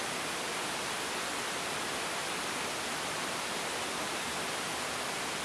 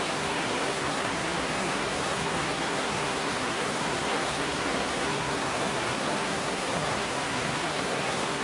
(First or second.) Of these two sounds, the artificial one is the second